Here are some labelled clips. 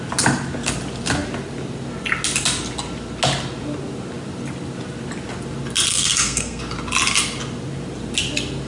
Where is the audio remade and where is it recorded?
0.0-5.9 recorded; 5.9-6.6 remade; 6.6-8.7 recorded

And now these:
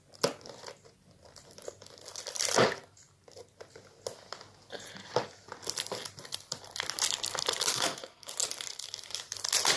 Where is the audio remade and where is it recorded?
0.0-7.7 recorded; 7.7-8.3 remade; 8.3-9.8 recorded

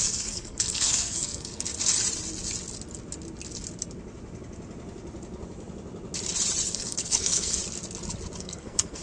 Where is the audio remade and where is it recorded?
0.0-1.7 remade; 1.7-6.7 recorded; 6.7-7.6 remade; 7.6-8.4 recorded; 8.4-9.0 remade

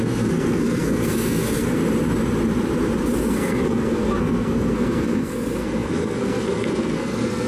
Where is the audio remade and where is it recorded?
0.0-1.8 remade; 1.8-3.2 recorded; 3.2-7.5 remade

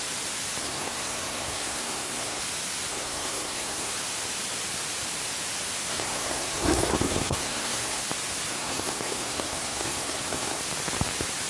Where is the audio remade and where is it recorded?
0.0-0.6 recorded; 0.6-2.4 remade; 2.4-2.9 recorded; 2.9-3.9 remade; 3.9-5.9 recorded; 5.9-8.0 remade; 8.0-8.5 recorded; 8.5-10.6 remade; 10.6-11.5 recorded

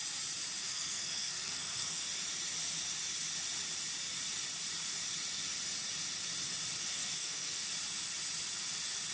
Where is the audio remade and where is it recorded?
0.0-0.6 recorded; 0.6-2.0 remade; 2.0-6.8 recorded; 6.8-7.7 remade; 7.7-9.1 recorded

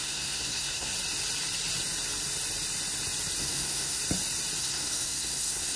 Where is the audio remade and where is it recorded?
0.0-0.9 remade; 0.9-3.4 recorded; 3.4-4.0 remade; 4.0-4.6 recorded; 4.6-5.8 remade

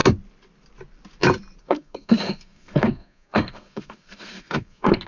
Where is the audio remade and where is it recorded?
0.0-1.6 recorded; 1.6-5.1 remade